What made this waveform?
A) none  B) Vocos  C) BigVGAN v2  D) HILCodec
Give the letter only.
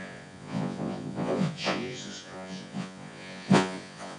B